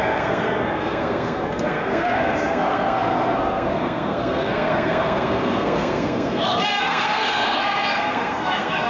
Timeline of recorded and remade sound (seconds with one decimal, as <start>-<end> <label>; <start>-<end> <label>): 0.0-8.9 remade